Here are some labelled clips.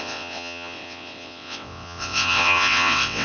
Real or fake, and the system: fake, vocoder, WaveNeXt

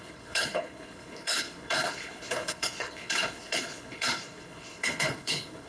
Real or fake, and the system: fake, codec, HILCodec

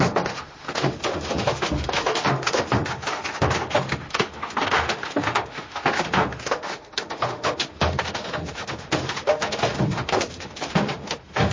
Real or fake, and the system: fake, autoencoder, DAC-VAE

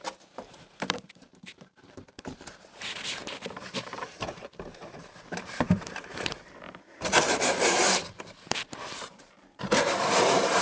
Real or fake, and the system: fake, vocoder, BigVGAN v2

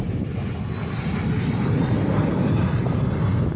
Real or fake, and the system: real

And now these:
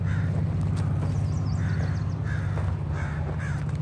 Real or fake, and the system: real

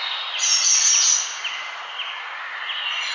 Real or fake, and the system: real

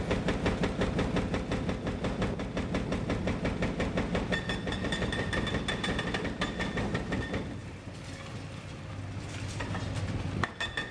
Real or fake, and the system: real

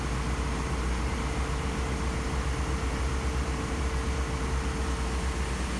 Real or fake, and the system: real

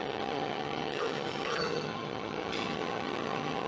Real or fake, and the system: fake, vocoder, HiFi-GAN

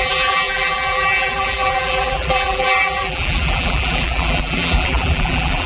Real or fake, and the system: fake, vocoder, BigVGAN v2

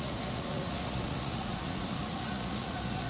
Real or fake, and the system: fake, vocoder, Vocos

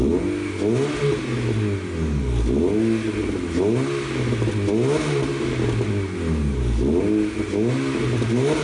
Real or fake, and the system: real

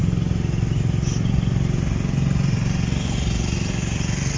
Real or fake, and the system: real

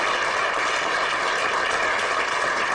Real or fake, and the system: real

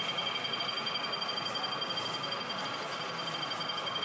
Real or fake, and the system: real